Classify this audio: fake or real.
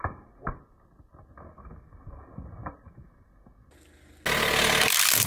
real